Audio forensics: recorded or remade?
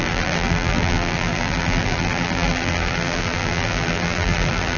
remade